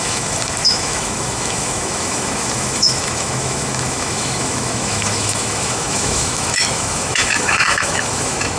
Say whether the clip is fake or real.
fake